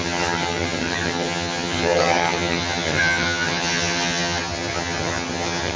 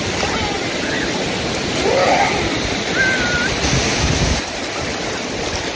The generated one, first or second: first